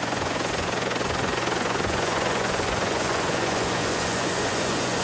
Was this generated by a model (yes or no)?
yes